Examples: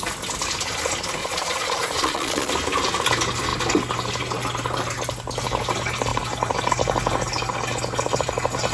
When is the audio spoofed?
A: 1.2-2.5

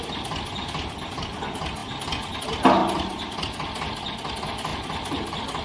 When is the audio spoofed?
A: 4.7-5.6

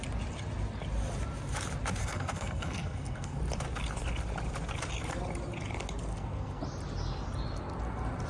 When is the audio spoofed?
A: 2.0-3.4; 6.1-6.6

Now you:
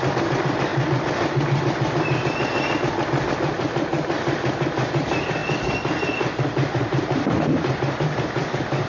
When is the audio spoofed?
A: 0.0-0.7; 2.8-8.9

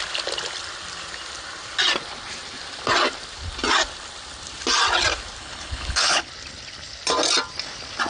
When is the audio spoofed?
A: 5.4-6.3

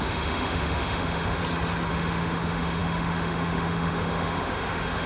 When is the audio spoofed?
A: 0.0-1.4; 1.9-5.1

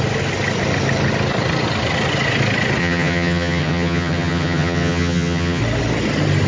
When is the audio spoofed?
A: 2.8-5.6